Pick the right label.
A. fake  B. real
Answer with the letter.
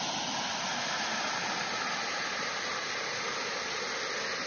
B